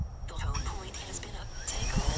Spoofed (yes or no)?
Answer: yes